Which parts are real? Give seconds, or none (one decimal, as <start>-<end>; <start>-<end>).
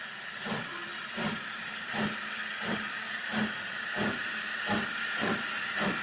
0.9-1.5; 2.2-3.0; 4.5-6.0